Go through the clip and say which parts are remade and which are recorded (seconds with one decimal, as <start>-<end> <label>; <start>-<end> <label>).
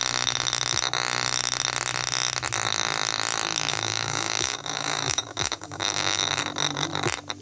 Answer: 0.0-3.7 recorded; 3.7-6.4 remade; 6.4-7.4 recorded